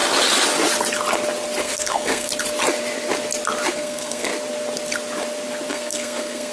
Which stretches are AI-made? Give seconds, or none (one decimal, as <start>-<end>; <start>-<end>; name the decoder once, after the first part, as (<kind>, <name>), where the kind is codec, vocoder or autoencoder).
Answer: 1.6-2.3 (codec, SNAC); 3.7-4.3; 5.7-6.5